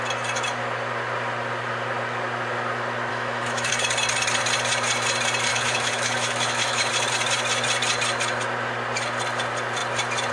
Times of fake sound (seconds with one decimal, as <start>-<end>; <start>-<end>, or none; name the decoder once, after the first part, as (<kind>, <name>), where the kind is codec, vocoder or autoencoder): 3.1-3.7 (autoencoder, DAC-VAE); 5.5-6.9